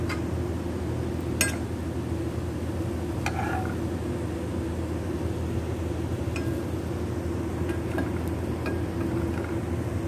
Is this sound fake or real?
real